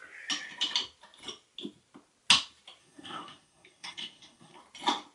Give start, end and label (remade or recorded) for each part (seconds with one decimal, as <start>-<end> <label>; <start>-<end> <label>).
0.0-2.8 recorded; 2.8-4.6 remade; 4.6-5.1 recorded